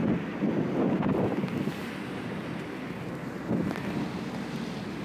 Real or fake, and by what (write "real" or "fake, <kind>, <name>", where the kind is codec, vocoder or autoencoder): real